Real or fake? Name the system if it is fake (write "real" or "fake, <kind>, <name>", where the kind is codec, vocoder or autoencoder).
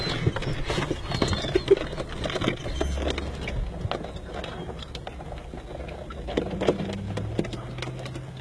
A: real